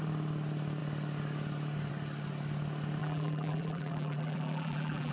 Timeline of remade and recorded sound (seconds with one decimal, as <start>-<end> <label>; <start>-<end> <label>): 0.0-3.0 recorded; 3.0-5.1 remade